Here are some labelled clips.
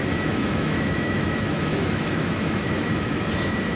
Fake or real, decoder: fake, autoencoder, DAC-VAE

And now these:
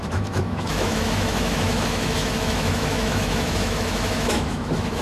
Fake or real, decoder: fake, autoencoder, DAC-VAE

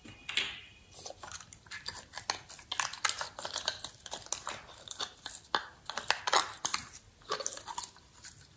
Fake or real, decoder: real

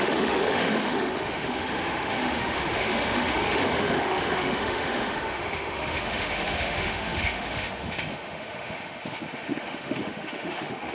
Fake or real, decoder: fake, autoencoder, DAC-VAE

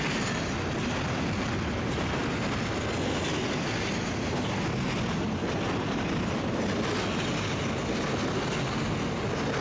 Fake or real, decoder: real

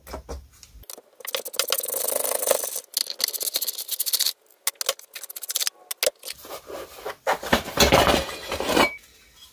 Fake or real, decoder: real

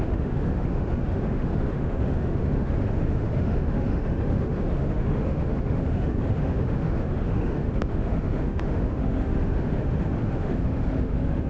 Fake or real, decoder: fake, autoencoder, DAC-VAE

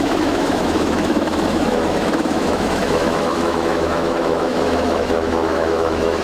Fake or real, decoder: fake, autoencoder, DAC-VAE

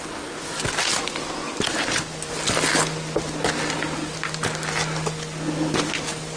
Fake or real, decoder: real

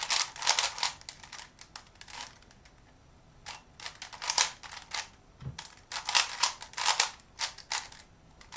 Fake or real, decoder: real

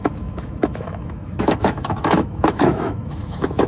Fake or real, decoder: fake, autoencoder, DAC-VAE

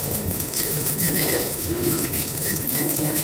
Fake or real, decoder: fake, autoencoder, DAC-VAE